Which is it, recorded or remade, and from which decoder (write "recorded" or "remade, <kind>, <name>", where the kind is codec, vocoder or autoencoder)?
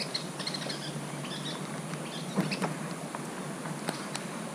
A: recorded